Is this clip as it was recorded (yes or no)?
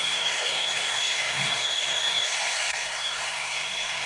no